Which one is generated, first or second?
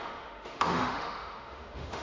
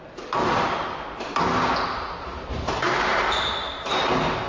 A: first